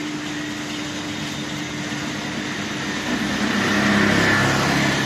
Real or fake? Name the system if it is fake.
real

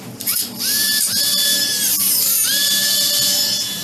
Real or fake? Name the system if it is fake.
fake, vocoder, BigVGAN v2